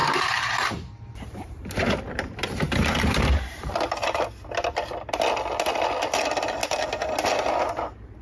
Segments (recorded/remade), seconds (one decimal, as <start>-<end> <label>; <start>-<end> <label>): 0.0-3.7 remade; 3.7-8.2 recorded